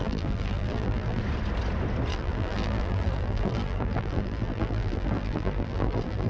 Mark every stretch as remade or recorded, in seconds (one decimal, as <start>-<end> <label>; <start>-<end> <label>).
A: 0.0-1.2 remade; 1.2-2.1 recorded; 2.1-6.3 remade